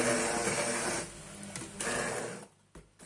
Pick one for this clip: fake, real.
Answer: real